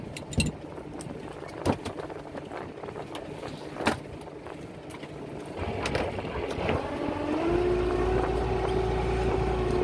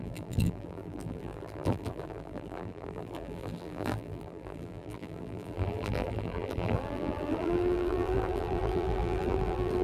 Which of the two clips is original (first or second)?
first